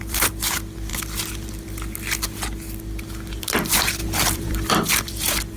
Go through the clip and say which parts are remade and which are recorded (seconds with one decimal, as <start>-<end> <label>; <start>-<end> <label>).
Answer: 0.0-0.9 remade; 0.9-3.3 recorded; 3.3-5.6 remade